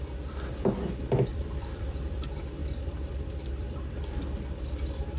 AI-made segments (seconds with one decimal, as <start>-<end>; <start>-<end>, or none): 1.3-2.2; 2.6-4.0